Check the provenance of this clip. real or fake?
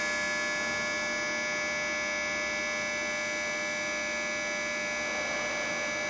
real